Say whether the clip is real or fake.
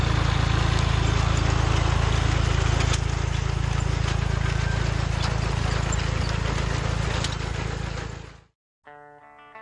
real